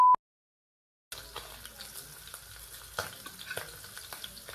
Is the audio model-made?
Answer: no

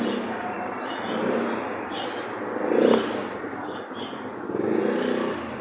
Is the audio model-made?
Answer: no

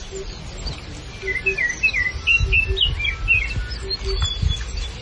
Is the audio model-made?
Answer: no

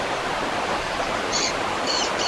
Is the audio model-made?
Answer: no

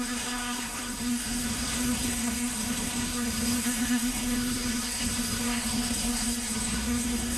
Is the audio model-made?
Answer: yes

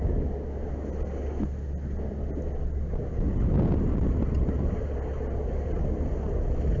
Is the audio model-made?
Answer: no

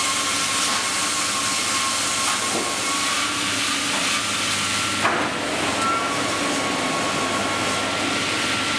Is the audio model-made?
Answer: no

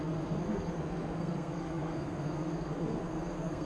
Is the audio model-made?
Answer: yes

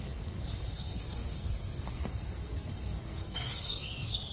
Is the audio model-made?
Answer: yes